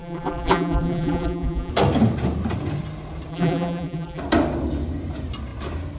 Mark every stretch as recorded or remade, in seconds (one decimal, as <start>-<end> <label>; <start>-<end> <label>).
0.0-1.7 remade; 1.7-3.3 recorded; 3.3-4.2 remade; 4.2-6.0 recorded